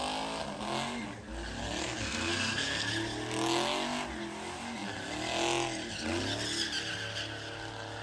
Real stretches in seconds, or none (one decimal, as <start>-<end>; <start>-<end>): 0.0-1.8; 2.9-8.0

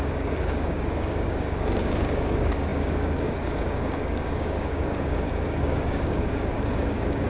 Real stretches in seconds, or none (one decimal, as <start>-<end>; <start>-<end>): none

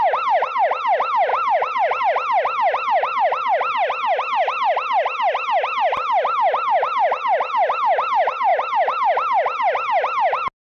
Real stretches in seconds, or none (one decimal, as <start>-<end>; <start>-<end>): 0.0-1.3; 2.0-10.7

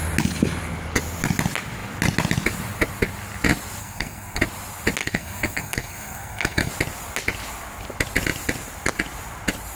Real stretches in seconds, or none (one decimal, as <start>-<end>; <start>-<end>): 0.0-3.8; 4.4-5.0; 6.7-9.7

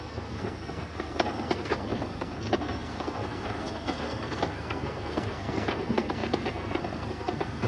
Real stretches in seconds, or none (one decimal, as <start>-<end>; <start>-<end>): none

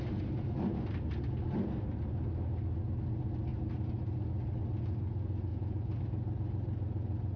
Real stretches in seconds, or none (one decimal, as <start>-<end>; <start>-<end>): 0.0-5.5; 6.0-7.4

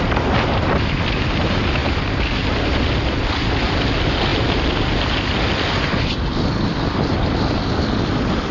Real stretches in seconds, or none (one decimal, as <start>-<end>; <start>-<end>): 0.0-6.3; 7.6-8.5